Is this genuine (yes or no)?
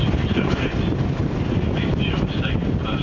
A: yes